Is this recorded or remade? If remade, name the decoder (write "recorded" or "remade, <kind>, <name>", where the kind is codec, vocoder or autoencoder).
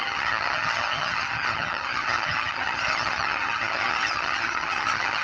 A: remade, vocoder, HiFi-GAN